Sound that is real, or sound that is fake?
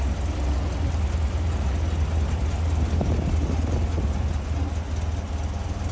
real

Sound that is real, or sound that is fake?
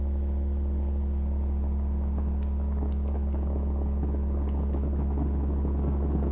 real